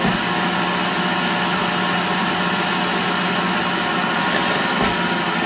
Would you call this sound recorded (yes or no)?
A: yes